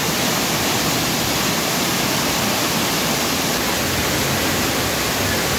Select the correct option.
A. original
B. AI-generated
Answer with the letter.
A